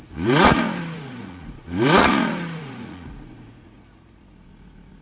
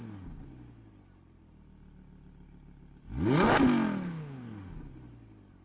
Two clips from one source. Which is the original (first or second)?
second